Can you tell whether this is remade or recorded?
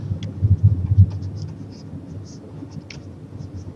recorded